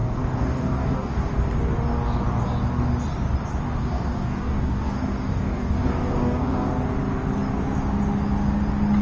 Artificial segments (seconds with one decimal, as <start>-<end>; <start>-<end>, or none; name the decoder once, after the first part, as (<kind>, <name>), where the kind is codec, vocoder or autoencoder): 0.0-1.3 (codec, DAC); 3.8-6.7

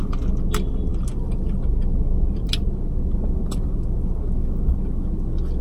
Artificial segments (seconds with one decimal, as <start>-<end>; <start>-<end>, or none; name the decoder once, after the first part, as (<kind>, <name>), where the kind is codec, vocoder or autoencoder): none

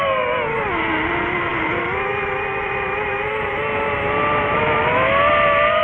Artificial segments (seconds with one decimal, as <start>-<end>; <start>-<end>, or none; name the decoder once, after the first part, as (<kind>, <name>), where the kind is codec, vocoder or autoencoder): 2.5-3.6 (vocoder, BigVGAN v2)

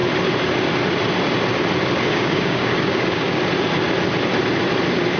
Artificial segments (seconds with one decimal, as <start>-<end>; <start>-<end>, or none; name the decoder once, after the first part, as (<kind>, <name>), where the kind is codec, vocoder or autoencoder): 2.1-3.4 (codec, DAC)

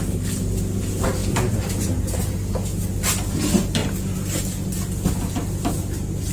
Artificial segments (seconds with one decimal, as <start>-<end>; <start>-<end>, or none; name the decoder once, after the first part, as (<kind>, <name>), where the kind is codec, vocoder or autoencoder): none